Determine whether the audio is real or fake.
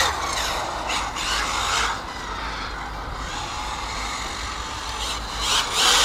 real